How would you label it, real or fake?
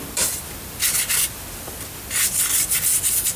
real